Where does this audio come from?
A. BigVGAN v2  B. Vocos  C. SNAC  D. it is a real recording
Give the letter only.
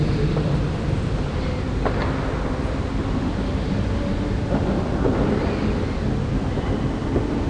D